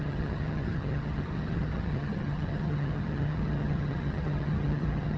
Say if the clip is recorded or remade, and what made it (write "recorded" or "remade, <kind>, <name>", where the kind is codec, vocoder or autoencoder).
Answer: remade, vocoder, HiFi-GAN